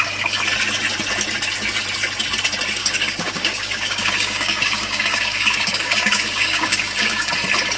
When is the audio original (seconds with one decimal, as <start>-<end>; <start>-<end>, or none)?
0.0-2.8; 7.3-7.8